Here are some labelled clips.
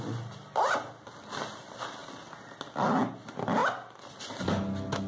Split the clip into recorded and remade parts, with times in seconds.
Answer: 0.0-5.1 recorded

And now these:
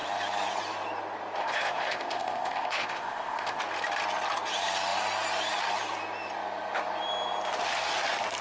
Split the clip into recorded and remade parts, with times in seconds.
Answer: 0.0-1.4 recorded; 1.4-3.6 remade; 3.6-8.4 recorded

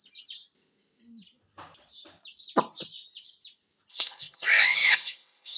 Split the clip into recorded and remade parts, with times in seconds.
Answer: 0.0-3.9 recorded; 3.9-5.6 remade

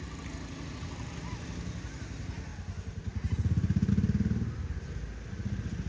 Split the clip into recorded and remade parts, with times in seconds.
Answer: 0.0-5.9 recorded

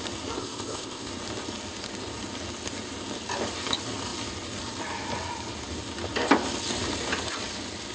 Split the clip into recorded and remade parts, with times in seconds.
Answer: 0.0-0.4 recorded; 0.4-1.1 remade; 1.1-7.9 recorded

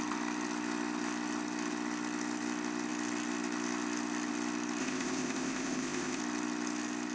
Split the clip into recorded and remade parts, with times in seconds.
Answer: 0.0-4.8 recorded; 4.8-6.2 remade; 6.2-7.1 recorded

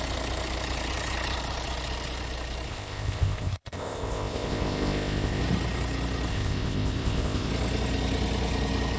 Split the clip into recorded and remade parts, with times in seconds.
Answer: 0.0-2.7 recorded; 2.7-5.4 remade; 5.4-6.3 recorded; 6.3-7.5 remade; 7.5-9.0 recorded

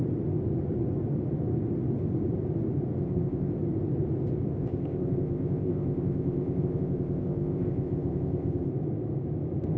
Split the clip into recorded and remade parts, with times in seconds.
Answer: 0.0-3.0 recorded; 3.0-3.5 remade; 3.5-4.6 recorded; 4.6-8.7 remade; 8.7-9.8 recorded